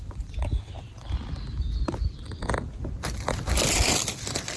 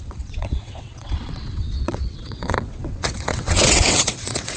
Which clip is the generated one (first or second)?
second